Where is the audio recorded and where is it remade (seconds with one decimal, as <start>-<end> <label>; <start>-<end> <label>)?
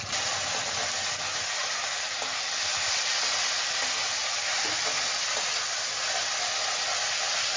0.0-7.6 recorded